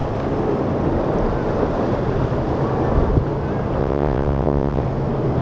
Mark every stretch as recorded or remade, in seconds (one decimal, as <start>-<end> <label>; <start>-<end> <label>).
0.0-3.8 recorded; 3.8-4.8 remade; 4.8-5.4 recorded